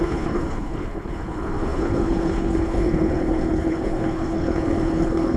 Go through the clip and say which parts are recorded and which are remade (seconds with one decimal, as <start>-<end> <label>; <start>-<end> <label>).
0.0-5.4 remade